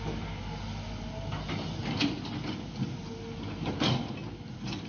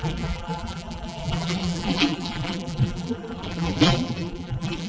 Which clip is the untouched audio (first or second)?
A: first